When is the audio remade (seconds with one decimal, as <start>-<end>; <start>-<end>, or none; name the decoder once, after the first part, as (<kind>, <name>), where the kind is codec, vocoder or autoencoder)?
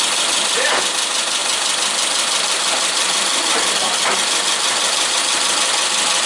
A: 1.4-5.2 (vocoder, BigVGAN v2)